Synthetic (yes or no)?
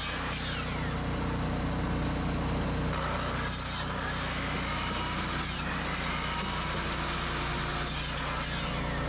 no